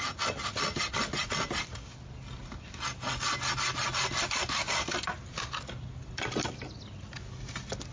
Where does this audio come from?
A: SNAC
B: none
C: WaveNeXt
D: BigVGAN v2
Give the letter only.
B